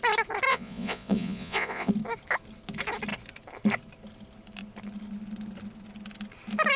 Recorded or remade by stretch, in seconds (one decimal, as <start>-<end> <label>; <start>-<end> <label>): 0.0-0.5 recorded; 0.5-1.9 remade; 1.9-6.8 recorded